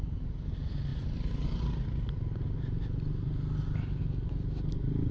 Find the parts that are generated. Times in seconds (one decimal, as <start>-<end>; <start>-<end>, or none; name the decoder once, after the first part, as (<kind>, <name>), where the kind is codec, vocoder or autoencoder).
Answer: none